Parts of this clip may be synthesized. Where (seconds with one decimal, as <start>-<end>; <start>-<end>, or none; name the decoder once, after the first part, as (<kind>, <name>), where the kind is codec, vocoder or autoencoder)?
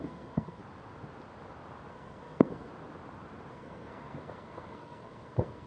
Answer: 0.0-0.6 (codec, SNAC); 1.9-2.7; 3.5-5.7